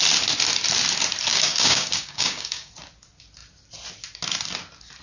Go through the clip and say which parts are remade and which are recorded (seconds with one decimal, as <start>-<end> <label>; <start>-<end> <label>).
0.0-1.3 recorded; 1.3-2.7 remade; 2.7-5.0 recorded